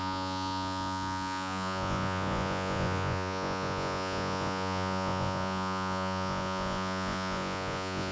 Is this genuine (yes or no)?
no